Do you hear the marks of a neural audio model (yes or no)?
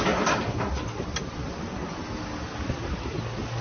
no